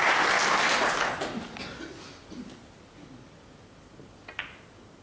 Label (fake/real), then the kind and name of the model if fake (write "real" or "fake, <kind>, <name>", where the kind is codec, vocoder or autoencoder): real